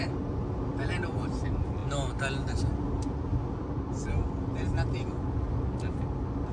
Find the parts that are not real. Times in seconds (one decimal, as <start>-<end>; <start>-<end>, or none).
none